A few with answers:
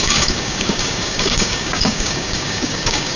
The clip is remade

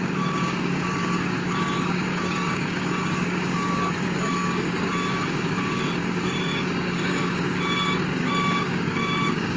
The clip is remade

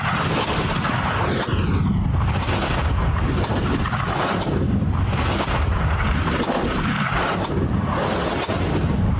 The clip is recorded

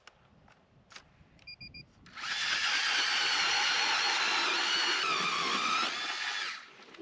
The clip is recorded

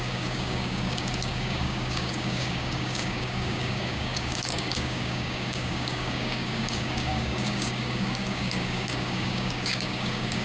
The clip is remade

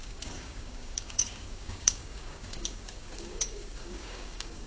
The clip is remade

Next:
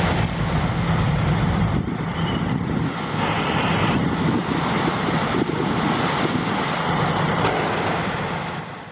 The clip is recorded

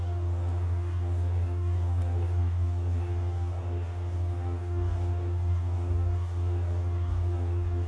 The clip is remade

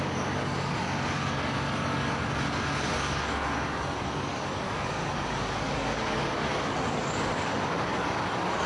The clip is remade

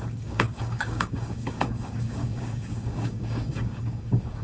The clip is remade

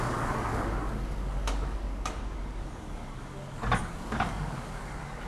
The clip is remade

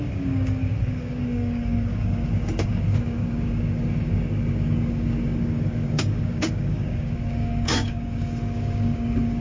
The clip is remade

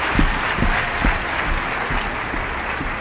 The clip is recorded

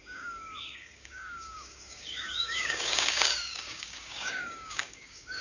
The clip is remade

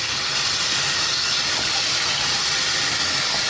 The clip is recorded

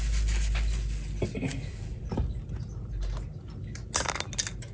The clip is recorded